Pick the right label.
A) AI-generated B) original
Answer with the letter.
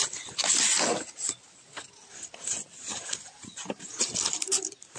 B